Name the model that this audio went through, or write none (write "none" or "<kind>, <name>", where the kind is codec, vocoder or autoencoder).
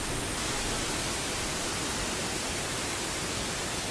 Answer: none